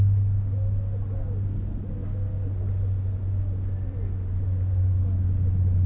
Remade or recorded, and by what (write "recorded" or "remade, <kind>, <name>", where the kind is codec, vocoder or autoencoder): recorded